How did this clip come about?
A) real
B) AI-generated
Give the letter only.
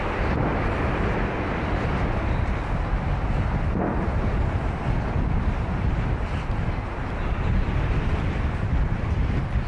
A